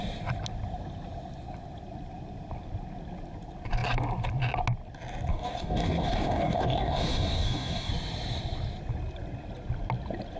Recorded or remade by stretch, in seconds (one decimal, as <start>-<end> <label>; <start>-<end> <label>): 0.0-5.3 recorded; 5.3-7.9 remade; 7.9-10.4 recorded